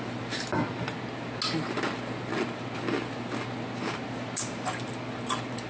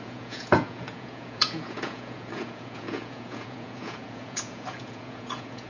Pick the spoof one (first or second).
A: second